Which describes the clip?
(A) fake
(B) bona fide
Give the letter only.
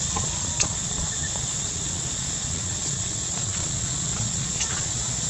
A